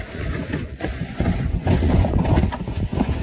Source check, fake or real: fake